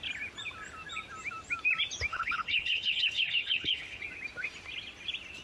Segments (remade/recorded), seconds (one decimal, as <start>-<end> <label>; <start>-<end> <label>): 0.0-2.1 recorded; 2.1-4.0 remade; 4.0-5.4 recorded